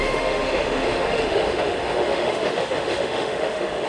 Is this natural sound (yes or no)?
no